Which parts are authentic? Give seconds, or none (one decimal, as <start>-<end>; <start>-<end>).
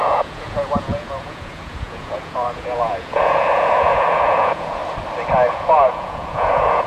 4.8-5.5